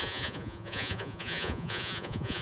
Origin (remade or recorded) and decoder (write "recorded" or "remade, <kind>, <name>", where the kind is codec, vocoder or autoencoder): remade, vocoder, Vocos